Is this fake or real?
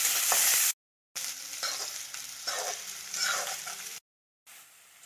real